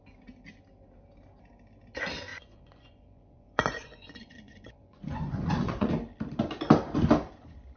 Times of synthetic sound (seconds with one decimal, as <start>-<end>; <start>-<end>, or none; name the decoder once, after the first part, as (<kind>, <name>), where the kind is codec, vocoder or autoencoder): 2.3-5.9 (vocoder, Vocos)